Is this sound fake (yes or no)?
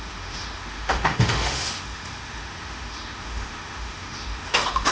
yes